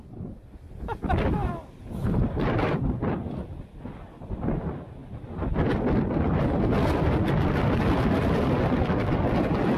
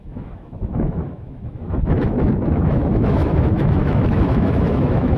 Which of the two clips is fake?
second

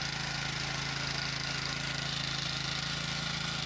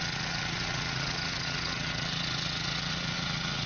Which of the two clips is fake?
second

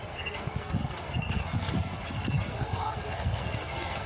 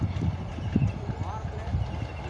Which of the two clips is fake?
first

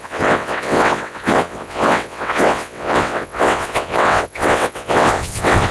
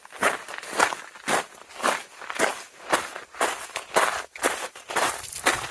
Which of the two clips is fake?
first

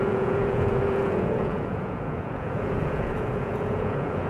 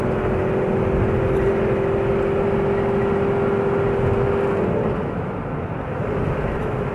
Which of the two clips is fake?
first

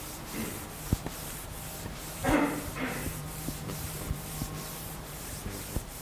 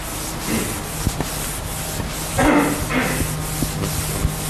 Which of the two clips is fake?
first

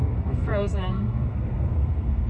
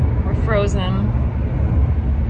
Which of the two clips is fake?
first